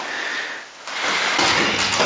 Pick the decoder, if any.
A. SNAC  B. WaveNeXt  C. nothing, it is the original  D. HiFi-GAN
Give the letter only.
C